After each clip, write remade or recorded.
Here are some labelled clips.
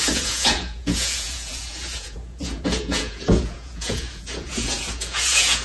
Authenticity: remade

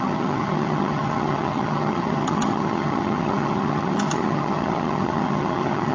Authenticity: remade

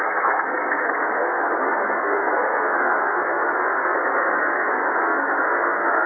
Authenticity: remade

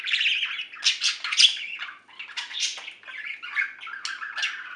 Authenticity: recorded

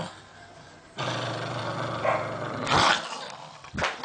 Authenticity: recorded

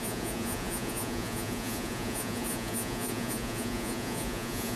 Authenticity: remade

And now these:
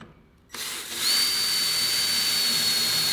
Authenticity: recorded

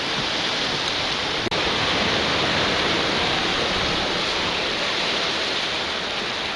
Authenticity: recorded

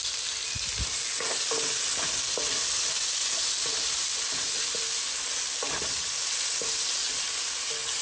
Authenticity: recorded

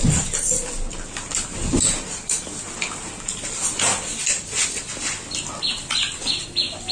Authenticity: recorded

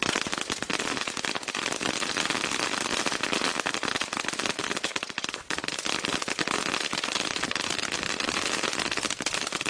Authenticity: recorded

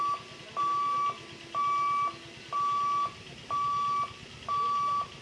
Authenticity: recorded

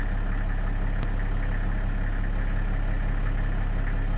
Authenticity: recorded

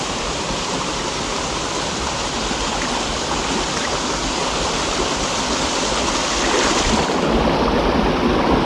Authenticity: recorded